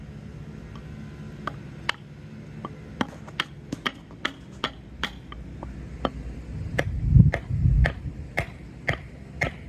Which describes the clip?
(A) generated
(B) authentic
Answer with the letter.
B